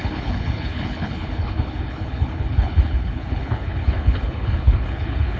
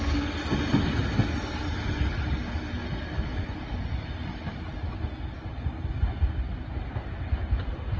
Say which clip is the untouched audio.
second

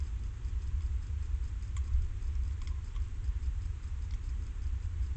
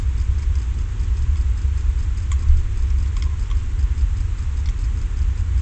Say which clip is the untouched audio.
second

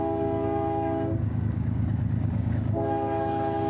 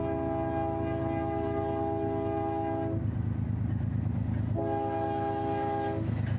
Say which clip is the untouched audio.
second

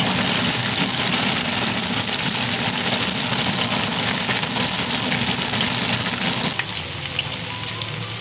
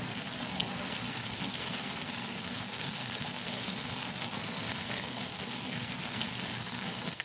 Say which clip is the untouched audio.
first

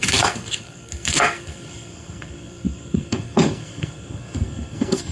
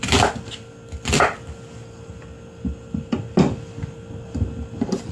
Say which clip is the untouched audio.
second